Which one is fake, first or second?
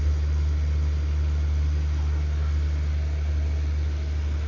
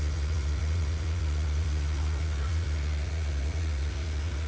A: second